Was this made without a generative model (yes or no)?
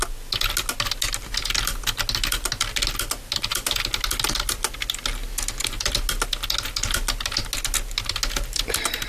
yes